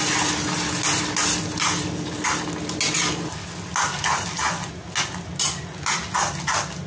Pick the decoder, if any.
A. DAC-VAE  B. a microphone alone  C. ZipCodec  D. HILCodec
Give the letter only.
B